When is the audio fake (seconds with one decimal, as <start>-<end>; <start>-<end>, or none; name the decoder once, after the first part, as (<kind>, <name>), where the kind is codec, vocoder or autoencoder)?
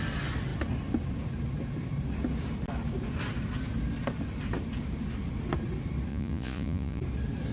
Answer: 6.1-7.0 (vocoder, Vocos)